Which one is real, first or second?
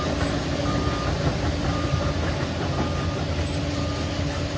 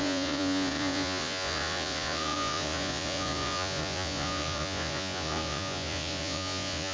first